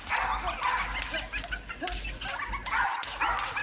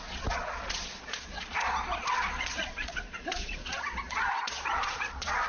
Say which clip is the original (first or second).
first